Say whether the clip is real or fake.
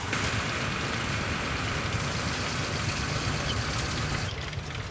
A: real